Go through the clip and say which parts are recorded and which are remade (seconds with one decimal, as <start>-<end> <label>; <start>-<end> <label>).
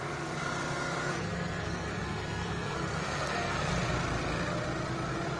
0.0-1.1 recorded; 1.1-3.7 remade; 3.7-5.4 recorded